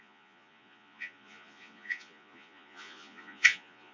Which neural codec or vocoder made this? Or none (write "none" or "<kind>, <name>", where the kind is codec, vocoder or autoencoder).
vocoder, Vocos